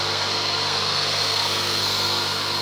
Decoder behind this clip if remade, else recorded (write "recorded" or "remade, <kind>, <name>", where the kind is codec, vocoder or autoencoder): remade, codec, SNAC